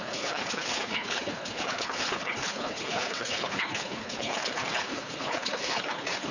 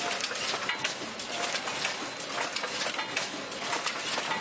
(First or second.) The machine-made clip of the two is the first